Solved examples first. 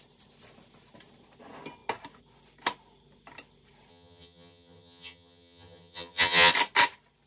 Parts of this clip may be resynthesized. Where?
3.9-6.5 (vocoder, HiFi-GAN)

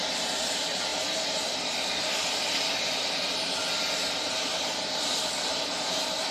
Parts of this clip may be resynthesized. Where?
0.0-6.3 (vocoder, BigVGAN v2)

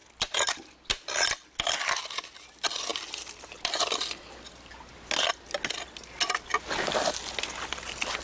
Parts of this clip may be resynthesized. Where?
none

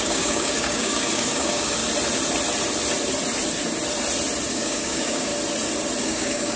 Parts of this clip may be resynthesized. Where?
0.0-1.8 (codec, DAC); 4.5-5.3; 6.0-6.6

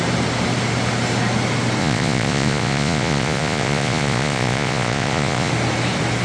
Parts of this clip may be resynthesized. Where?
1.8-5.5 (vocoder, Vocos)